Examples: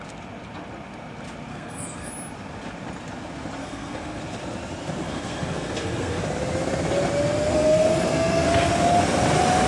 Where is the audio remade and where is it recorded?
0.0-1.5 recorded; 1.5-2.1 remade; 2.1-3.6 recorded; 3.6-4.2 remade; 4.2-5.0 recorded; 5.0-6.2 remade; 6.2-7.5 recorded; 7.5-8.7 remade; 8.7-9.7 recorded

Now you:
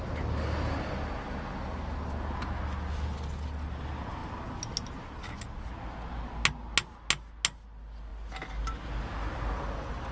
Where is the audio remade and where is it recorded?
0.0-10.1 recorded

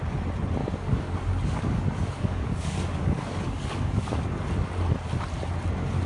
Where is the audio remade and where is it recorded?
0.0-0.6 recorded; 0.6-4.3 remade; 4.3-6.1 recorded

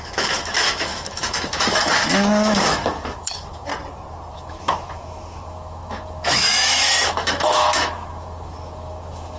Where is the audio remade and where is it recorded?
0.0-3.7 remade; 3.7-4.3 recorded; 4.3-9.4 remade

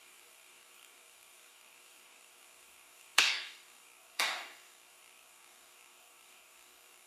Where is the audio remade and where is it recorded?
0.0-7.1 remade

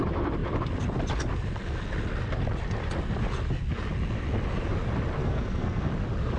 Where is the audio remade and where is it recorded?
0.0-5.2 recorded; 5.2-5.9 remade; 5.9-6.4 recorded

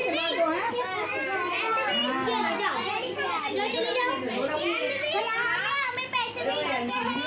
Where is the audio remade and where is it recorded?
0.0-7.3 recorded